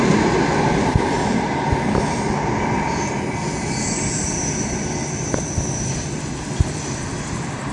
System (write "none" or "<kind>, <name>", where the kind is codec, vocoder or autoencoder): none